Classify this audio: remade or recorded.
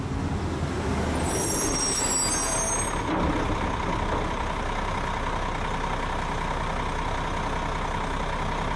recorded